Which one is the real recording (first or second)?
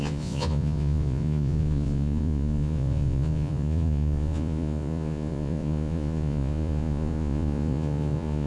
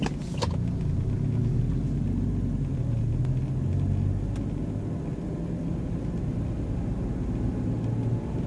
second